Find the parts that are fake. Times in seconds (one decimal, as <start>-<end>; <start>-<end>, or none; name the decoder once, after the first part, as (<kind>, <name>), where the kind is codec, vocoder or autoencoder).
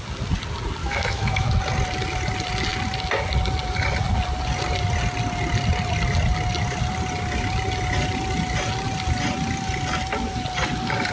0.8-1.5 (autoencoder, DAC-VAE)